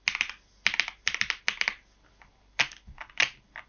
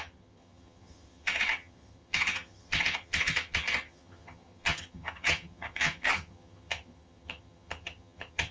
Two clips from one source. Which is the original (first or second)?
first